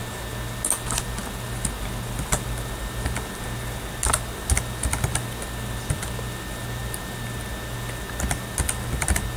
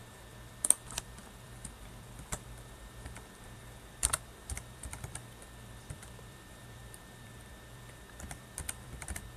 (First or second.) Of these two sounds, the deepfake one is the second